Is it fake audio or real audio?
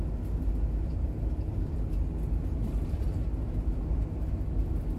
real